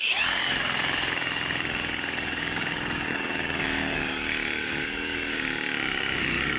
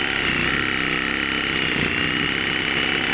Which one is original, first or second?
second